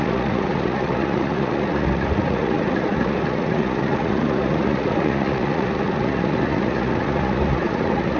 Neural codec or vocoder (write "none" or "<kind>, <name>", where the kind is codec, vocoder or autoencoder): vocoder, Vocos